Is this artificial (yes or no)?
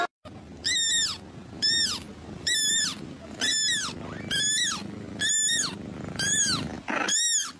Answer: no